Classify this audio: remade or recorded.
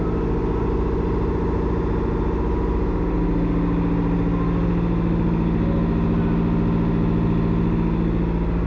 recorded